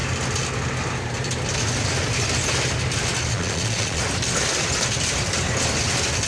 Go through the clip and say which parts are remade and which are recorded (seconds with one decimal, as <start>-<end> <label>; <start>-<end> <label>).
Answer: 0.0-3.3 recorded; 3.3-4.0 remade; 4.0-6.3 recorded